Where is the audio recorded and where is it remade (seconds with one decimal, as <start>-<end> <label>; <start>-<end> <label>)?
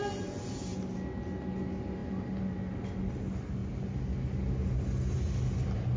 0.0-6.0 recorded